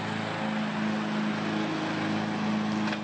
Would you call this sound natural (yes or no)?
yes